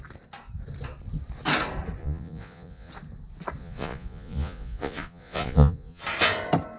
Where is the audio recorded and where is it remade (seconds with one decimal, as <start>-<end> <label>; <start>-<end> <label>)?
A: 0.0-2.0 recorded; 2.0-2.9 remade; 2.9-3.6 recorded; 3.6-6.0 remade; 6.0-6.8 recorded